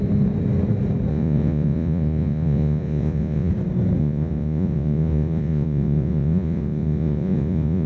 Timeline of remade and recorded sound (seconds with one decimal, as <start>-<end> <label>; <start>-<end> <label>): 0.0-1.1 recorded; 1.1-3.5 remade; 3.5-4.0 recorded; 4.0-7.9 remade

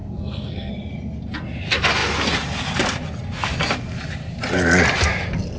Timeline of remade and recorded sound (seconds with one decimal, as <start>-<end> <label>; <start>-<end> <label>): 0.0-0.7 remade; 0.7-5.6 recorded

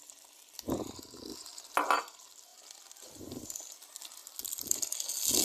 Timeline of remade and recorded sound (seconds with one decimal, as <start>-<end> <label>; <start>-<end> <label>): 0.0-5.4 recorded

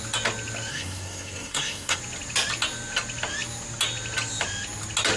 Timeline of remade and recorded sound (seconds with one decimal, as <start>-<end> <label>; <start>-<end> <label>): 0.0-0.7 recorded; 0.7-2.0 remade; 2.0-5.2 recorded

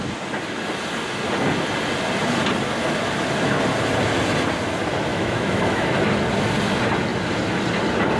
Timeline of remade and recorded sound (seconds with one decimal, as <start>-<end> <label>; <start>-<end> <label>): 0.0-5.1 recorded; 5.1-6.0 remade; 6.0-8.2 recorded

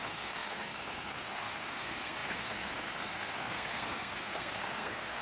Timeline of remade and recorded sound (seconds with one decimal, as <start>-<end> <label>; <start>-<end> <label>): 0.0-5.2 remade

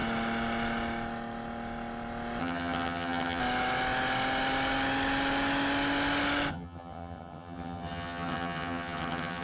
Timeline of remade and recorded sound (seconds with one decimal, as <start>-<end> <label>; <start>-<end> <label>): 0.0-2.4 recorded; 2.4-3.4 remade; 3.4-6.5 recorded; 6.5-9.4 remade